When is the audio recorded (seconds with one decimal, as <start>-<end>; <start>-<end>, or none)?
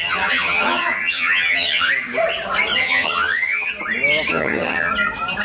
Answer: 1.9-2.8; 3.7-4.3; 4.9-5.4